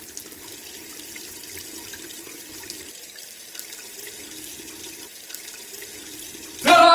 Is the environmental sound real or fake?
fake